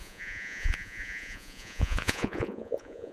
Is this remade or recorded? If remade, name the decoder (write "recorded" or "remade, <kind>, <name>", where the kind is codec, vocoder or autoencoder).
remade, vocoder, Vocos